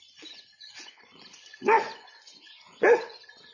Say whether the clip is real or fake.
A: fake